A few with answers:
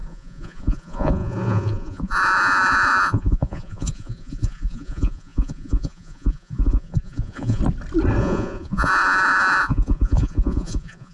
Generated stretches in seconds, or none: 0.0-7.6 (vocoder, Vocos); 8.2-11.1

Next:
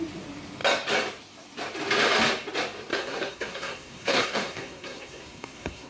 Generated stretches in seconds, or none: 2.9-5.9 (codec, SNAC)

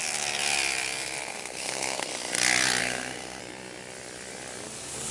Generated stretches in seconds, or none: 1.3-2.1 (codec, SNAC); 2.8-3.4

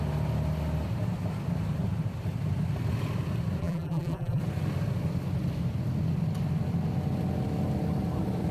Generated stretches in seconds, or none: 3.6-4.4 (vocoder, BigVGAN v2)

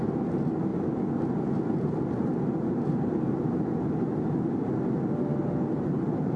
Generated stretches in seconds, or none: none

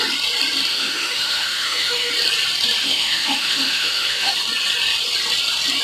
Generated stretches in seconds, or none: 0.7-2.1 (autoencoder, DAC-VAE); 2.8-4.3